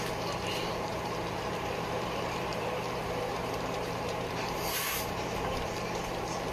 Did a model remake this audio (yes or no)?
yes